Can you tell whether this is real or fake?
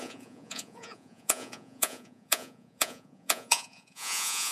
fake